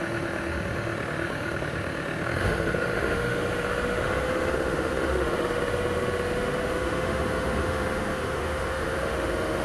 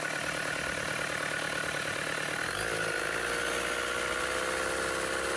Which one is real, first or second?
second